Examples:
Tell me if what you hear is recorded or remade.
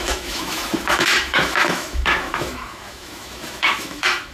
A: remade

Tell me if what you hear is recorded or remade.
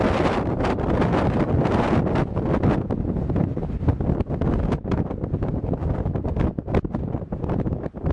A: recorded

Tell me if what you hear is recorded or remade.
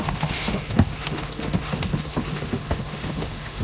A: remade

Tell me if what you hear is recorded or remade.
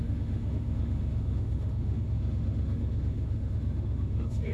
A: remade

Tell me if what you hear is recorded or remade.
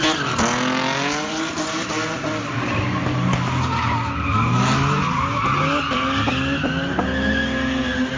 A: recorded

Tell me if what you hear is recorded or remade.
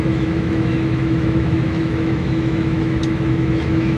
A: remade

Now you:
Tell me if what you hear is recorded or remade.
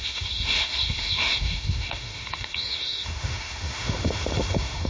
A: remade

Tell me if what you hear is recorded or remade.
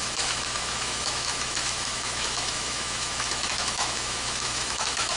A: remade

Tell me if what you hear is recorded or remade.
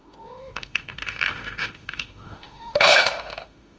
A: remade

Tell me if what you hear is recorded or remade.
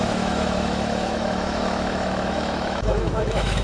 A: remade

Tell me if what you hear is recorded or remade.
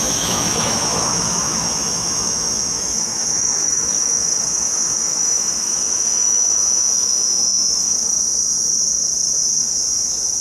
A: remade